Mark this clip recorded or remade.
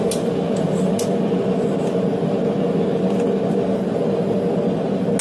recorded